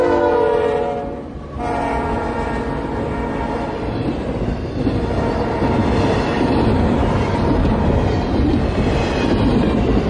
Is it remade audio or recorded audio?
recorded